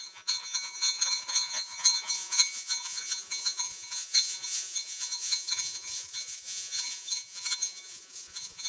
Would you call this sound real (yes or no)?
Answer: no